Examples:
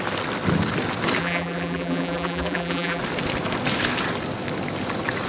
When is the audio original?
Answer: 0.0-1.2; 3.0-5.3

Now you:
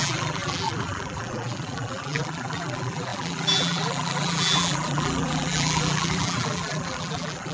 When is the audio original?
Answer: none

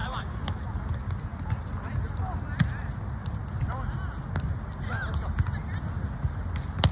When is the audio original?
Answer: 0.0-6.9

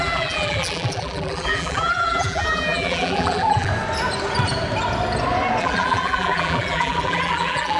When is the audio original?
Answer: 3.7-5.6

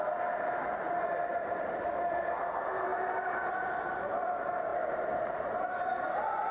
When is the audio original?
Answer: 0.0-1.3; 1.8-6.5